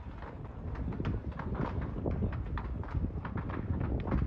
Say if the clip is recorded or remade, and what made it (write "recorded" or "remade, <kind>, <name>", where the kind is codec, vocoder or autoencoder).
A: recorded